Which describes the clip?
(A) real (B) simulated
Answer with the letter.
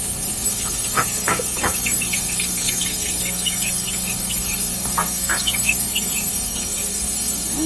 B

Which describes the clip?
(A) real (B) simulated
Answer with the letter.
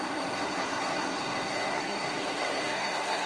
B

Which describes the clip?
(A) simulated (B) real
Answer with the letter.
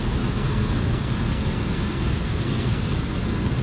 A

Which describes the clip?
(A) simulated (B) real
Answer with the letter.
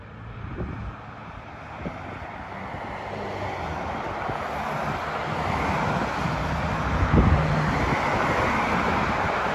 B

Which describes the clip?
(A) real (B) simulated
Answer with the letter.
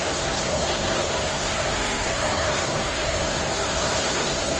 B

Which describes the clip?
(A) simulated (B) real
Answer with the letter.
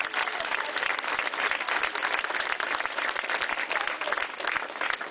B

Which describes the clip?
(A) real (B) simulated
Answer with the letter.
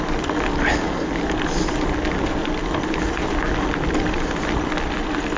A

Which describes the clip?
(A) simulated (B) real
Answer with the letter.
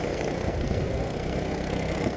A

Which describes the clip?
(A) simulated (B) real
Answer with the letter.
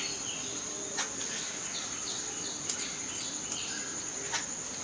B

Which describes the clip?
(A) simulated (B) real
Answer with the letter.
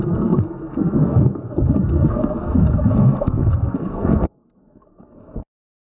A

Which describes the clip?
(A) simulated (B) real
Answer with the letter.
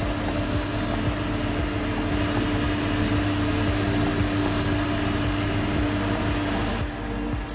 B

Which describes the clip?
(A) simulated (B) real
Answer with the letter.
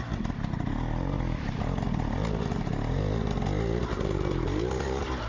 B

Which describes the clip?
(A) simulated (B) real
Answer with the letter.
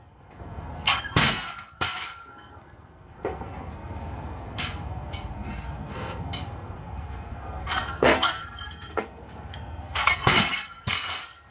A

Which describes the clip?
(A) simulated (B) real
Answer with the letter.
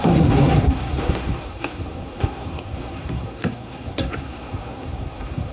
A